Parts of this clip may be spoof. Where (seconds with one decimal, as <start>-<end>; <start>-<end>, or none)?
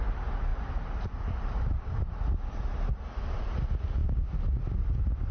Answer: 0.0-5.3